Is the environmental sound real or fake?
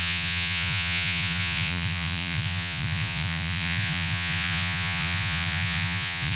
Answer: fake